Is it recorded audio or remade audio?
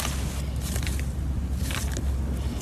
recorded